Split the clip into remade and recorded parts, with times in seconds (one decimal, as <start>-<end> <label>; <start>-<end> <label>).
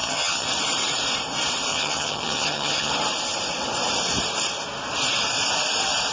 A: 0.0-0.5 remade; 0.5-1.7 recorded; 1.7-2.9 remade; 2.9-6.1 recorded